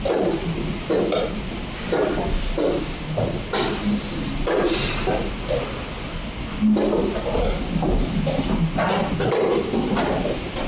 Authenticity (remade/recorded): recorded